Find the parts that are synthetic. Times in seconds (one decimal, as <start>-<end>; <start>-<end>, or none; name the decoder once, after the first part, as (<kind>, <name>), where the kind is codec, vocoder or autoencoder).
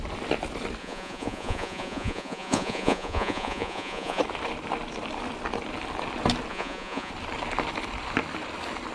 0.8-4.2 (vocoder, Vocos); 6.5-7.1